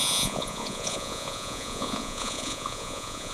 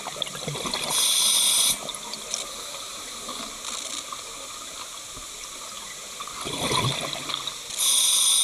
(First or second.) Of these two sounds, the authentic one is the second